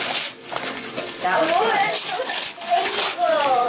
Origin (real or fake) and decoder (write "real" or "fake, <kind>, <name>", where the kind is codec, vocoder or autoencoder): fake, vocoder, Vocos